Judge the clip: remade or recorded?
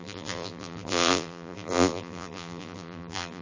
remade